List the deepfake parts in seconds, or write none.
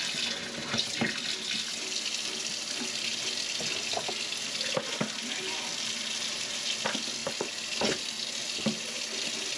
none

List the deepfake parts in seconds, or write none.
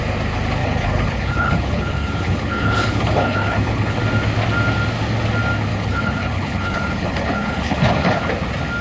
0.6-4.0 (codec, HILCodec); 5.7-8.2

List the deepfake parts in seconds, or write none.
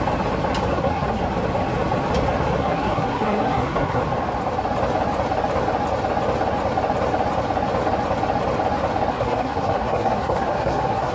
0.7-1.2 (codec, SNAC); 2.6-4.0; 9.1-11.1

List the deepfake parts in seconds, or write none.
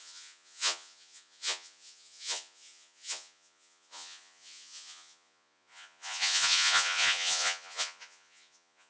0.0-8.9 (vocoder, Vocos)